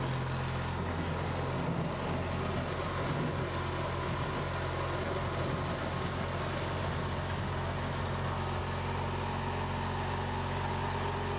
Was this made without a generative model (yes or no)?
yes